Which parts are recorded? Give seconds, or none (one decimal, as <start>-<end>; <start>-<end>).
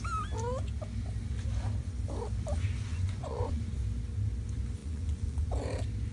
0.0-2.9; 3.6-4.8; 5.5-6.1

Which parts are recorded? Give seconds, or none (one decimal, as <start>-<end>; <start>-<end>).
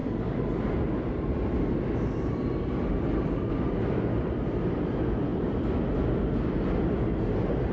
0.0-7.7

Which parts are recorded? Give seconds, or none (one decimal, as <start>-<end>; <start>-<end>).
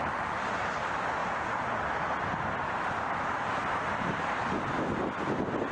0.0-5.7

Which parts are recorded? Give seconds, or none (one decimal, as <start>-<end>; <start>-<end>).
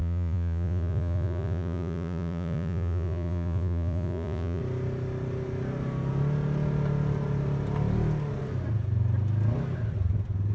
4.6-10.5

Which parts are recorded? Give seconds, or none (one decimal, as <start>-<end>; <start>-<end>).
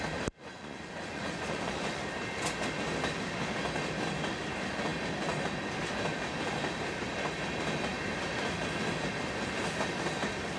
0.0-0.4; 2.0-10.6